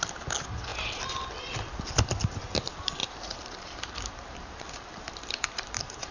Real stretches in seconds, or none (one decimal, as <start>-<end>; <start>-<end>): 0.0-3.0